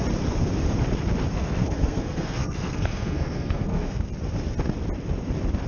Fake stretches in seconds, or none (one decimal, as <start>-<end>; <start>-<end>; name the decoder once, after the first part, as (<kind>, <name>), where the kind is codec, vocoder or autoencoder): 1.3-4.0 (codec, SNAC)